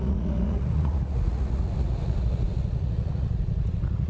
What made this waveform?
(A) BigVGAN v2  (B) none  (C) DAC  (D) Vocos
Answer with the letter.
D